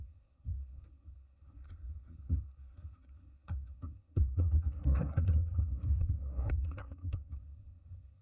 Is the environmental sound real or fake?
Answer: fake